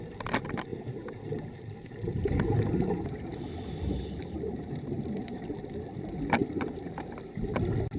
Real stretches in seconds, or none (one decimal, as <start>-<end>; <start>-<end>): 0.0-0.7; 5.4-6.4; 7.0-8.0